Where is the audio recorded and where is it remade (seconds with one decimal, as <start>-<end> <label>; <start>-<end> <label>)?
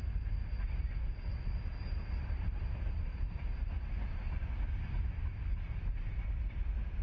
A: 0.0-7.0 recorded